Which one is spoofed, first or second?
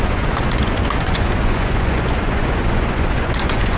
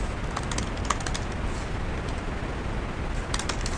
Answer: first